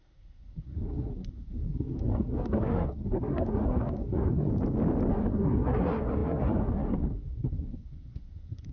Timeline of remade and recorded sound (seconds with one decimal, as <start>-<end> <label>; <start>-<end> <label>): 0.0-4.5 remade; 4.5-5.1 recorded; 5.1-8.7 remade